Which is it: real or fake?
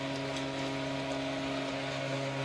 real